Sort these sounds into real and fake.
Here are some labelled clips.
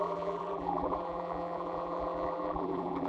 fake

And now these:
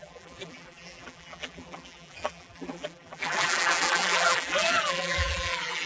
fake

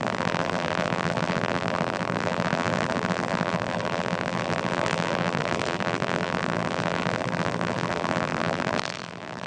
fake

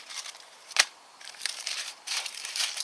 fake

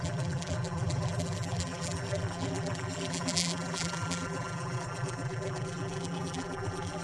fake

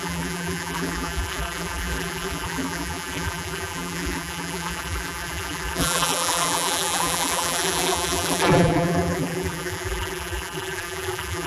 fake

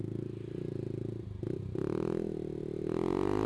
real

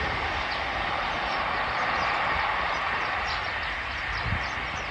real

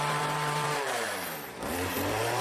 fake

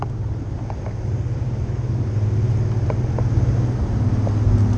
real